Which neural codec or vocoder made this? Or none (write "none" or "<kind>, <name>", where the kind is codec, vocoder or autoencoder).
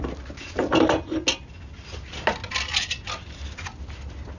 none